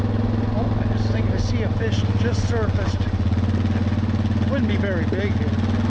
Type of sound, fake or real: real